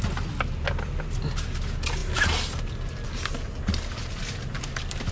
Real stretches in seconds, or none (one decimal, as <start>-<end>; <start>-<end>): 0.0-5.1